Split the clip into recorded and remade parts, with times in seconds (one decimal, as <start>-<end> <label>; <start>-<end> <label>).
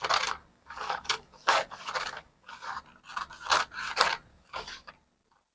0.0-0.5 recorded; 0.5-2.8 remade; 2.8-4.3 recorded; 4.3-4.9 remade; 4.9-5.5 recorded